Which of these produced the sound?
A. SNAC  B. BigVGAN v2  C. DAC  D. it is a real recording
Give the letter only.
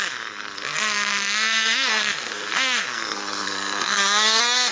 A